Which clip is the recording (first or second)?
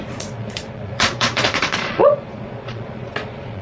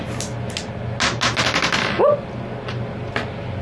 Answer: second